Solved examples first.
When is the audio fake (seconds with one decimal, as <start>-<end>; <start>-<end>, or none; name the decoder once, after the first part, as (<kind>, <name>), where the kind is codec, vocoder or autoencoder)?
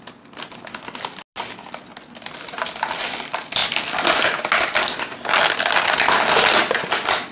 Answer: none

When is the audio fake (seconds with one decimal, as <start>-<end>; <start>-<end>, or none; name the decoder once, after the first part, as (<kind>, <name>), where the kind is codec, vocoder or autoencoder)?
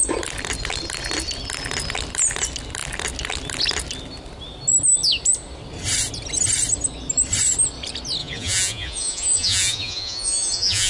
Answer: 8.2-10.9 (vocoder, Vocos)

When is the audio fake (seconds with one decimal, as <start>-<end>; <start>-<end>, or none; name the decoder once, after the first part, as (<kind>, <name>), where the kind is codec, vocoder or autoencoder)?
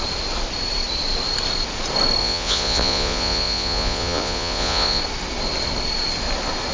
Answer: 2.2-5.0 (vocoder, Vocos)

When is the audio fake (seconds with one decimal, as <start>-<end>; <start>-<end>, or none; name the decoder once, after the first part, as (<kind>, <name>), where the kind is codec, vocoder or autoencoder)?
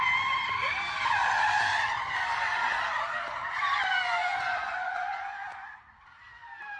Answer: 4.2-5.8 (vocoder, Vocos)